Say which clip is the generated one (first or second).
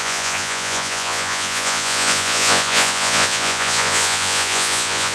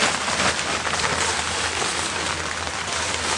first